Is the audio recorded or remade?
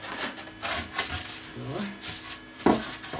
recorded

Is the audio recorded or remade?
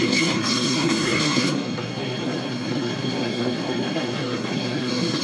remade